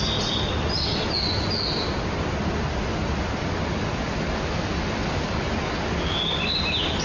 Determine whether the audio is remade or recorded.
recorded